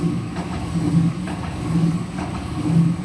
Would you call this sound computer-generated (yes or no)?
yes